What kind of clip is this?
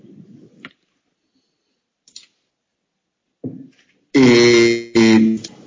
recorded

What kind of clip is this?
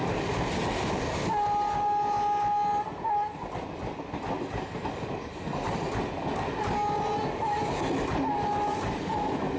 recorded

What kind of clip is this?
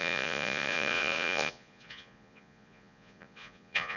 remade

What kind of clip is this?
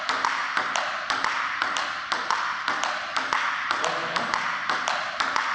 recorded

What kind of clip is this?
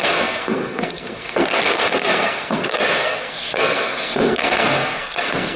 remade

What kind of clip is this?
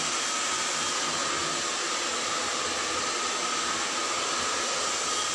recorded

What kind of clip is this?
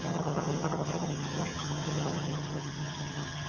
remade